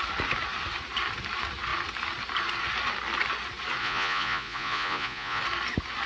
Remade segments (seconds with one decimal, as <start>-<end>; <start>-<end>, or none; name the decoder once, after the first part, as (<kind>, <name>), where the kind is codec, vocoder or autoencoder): 3.8-5.4 (vocoder, Vocos)